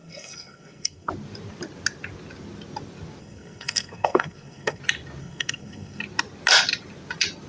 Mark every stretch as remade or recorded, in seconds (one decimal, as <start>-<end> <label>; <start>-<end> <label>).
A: 0.0-1.1 remade; 1.1-3.2 recorded; 3.2-4.8 remade; 4.8-5.2 recorded; 5.2-6.0 remade; 6.0-7.5 recorded